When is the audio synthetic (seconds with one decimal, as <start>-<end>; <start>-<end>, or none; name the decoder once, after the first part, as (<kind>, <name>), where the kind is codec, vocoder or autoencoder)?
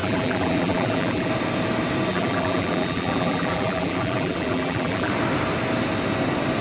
0.0-1.3 (vocoder, BigVGAN v2); 2.1-5.1